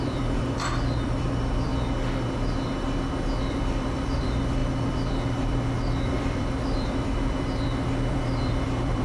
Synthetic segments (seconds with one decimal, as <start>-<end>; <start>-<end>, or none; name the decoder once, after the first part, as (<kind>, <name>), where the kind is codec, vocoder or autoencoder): 0.0-1.7 (vocoder, BigVGAN v2); 3.4-9.0

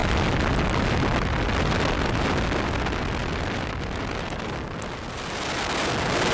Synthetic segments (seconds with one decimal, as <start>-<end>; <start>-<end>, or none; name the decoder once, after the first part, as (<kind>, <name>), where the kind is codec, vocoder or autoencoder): none

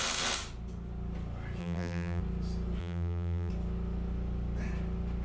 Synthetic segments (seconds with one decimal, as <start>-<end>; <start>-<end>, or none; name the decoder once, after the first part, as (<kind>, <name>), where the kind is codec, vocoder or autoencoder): 1.6-2.2 (vocoder, BigVGAN v2); 2.8-3.5

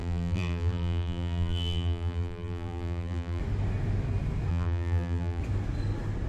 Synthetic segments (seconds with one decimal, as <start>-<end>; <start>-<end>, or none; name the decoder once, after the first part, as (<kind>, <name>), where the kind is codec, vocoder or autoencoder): 0.0-3.4 (vocoder, BigVGAN v2); 4.5-5.4

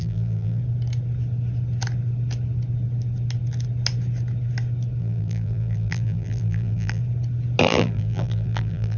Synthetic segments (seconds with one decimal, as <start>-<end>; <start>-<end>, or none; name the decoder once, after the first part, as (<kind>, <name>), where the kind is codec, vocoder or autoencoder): 0.0-0.6 (vocoder, BigVGAN v2); 5.0-7.0; 7.6-9.0